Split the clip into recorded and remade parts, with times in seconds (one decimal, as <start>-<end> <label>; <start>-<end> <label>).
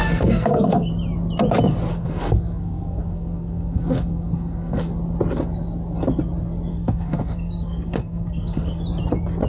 0.0-0.9 remade; 0.9-1.9 recorded; 1.9-4.9 remade; 4.9-6.7 recorded; 6.7-8.8 remade; 8.8-9.5 recorded